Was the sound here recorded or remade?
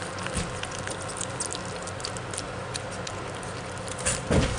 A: recorded